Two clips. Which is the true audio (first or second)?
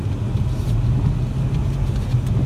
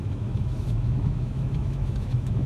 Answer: first